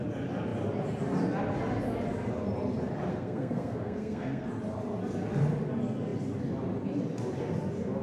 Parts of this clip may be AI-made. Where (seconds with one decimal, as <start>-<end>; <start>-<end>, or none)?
3.1-4.5